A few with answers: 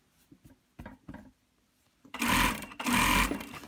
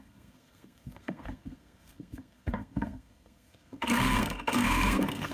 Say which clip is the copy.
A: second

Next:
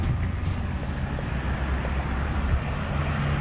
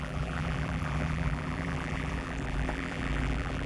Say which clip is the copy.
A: second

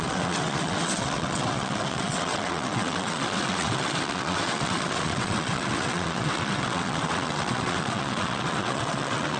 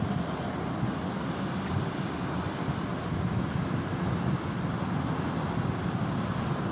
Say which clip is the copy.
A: first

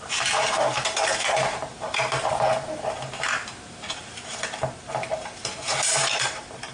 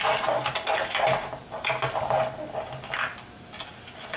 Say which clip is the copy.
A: first